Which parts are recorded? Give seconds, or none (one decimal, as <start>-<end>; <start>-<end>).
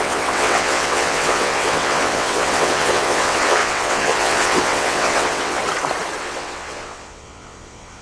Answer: 5.6-6.2